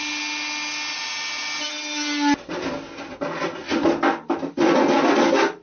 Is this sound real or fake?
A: real